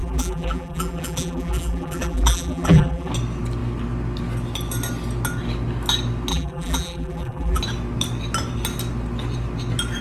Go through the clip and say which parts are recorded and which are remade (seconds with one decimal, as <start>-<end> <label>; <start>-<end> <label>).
0.0-3.1 remade; 3.1-6.3 recorded; 6.3-7.6 remade; 7.6-10.0 recorded